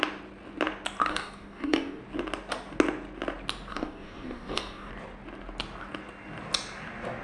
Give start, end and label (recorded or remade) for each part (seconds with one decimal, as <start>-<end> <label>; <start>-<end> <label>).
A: 0.0-1.1 recorded; 1.1-2.0 remade; 2.0-3.7 recorded; 3.7-4.9 remade; 4.9-7.2 recorded